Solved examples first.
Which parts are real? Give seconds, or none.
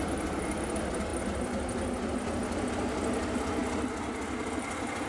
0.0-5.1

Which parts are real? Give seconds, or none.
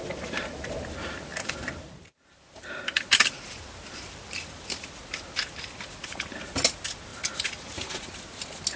0.0-1.3; 6.4-7.1; 7.9-8.8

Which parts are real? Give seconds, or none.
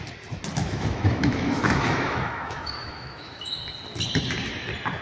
0.0-0.6; 3.6-5.0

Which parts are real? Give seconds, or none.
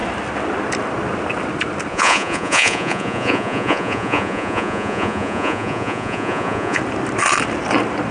0.0-1.9; 6.8-8.1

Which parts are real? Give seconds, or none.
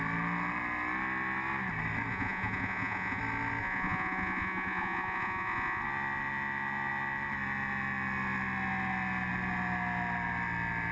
0.0-2.1; 3.2-3.6; 5.8-10.9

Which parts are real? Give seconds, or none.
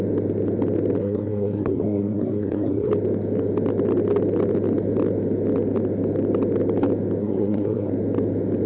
0.0-1.0; 2.9-7.2; 7.9-8.7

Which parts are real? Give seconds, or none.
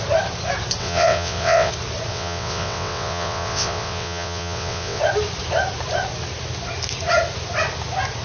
0.0-0.8; 1.7-2.1; 5.0-8.2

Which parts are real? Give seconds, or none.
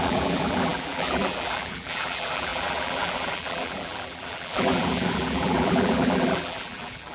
none